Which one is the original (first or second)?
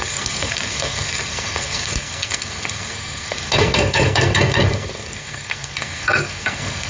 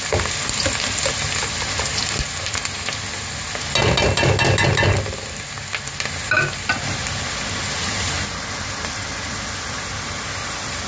second